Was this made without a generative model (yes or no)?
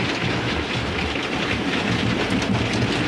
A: yes